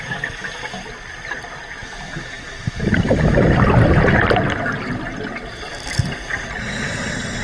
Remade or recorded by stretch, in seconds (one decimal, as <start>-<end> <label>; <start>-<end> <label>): 0.0-7.4 recorded

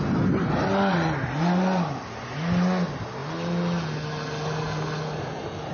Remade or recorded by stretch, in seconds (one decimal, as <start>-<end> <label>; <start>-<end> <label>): 0.0-5.7 recorded

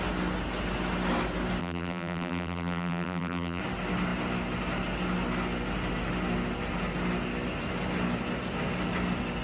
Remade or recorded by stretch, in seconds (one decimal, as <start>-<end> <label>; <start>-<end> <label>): 0.0-1.6 recorded; 1.6-3.6 remade; 3.6-9.4 recorded